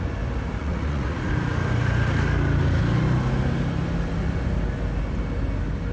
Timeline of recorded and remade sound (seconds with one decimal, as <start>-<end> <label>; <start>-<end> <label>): 0.0-0.6 recorded; 0.6-1.3 remade; 1.3-5.9 recorded